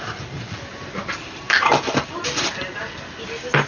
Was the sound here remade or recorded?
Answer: recorded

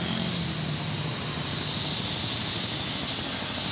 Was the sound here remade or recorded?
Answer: recorded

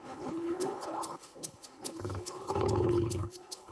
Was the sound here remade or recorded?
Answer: remade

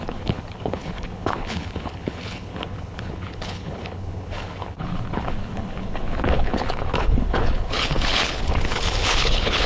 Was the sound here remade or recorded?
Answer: remade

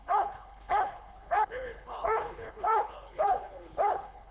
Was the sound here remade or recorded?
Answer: remade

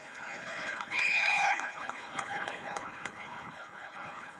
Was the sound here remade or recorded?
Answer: remade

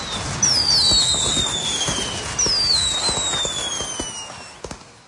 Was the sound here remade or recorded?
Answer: recorded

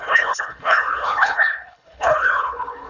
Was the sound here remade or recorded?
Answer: remade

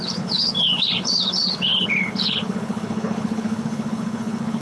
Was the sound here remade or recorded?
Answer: remade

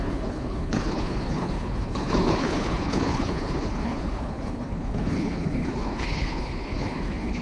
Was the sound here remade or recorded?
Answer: remade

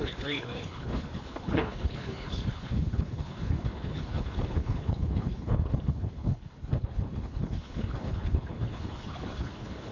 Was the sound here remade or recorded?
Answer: remade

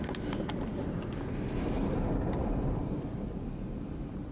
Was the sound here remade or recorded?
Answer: recorded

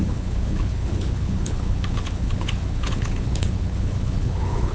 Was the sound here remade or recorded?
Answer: remade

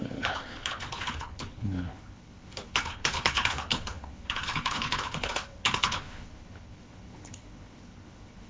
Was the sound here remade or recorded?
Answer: remade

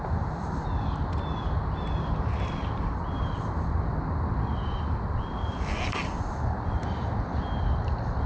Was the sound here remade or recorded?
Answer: recorded